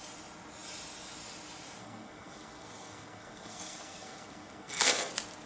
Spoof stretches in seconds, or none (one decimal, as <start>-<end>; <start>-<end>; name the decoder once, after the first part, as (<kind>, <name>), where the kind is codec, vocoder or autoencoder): 1.8-5.1 (codec, SNAC)